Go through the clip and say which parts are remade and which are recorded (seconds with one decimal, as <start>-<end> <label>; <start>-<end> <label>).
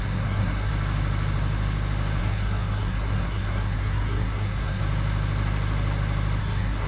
0.0-0.7 remade; 0.7-2.2 recorded; 2.2-4.8 remade; 4.8-6.4 recorded; 6.4-6.9 remade